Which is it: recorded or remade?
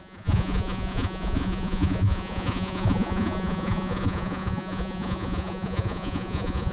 remade